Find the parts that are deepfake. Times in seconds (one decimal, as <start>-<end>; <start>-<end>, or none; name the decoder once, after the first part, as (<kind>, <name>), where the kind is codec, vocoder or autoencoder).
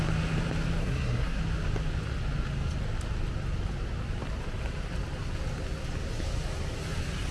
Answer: 0.8-1.4 (codec, SNAC)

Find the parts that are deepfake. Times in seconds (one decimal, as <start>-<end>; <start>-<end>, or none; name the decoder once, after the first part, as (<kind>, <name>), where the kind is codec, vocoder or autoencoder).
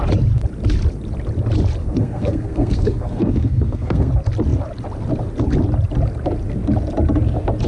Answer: 1.8-4.1 (codec, SNAC)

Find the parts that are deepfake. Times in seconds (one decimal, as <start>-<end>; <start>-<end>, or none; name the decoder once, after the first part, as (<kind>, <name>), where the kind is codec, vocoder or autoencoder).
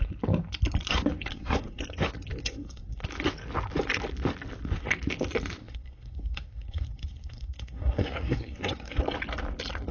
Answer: 1.3-1.8 (codec, SNAC); 2.4-3.0; 5.6-9.0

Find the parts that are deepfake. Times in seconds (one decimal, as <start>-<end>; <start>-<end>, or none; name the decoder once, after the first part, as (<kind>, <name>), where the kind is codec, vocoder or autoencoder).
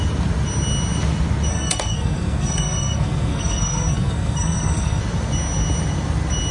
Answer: 1.5-5.0 (codec, SNAC)